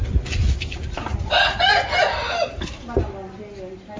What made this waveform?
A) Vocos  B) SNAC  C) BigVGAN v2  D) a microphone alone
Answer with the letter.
D